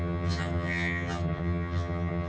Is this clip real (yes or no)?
no